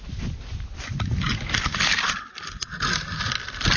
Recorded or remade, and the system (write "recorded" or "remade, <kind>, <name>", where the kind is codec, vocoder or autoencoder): recorded